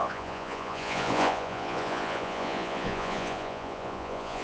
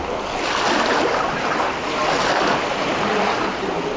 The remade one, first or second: first